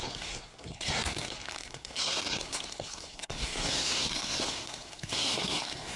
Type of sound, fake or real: fake